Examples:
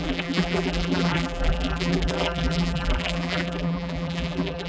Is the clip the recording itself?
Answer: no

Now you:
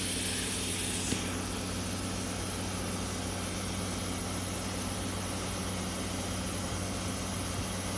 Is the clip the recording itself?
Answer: yes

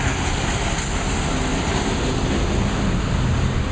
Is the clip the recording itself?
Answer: yes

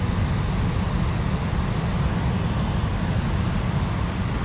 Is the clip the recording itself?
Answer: yes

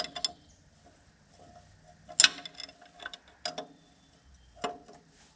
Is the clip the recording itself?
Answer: yes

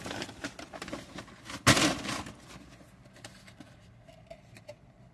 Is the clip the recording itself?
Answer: yes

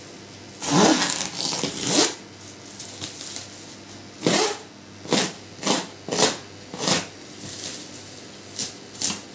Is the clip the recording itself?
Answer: yes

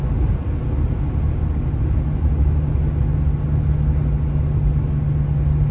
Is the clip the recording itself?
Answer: yes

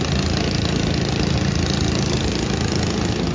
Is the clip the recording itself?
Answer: yes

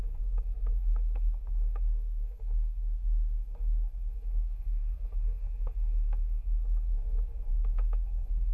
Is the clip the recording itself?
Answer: no